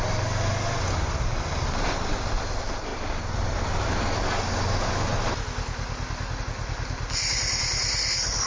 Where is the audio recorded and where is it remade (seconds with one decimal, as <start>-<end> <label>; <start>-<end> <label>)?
0.0-8.5 recorded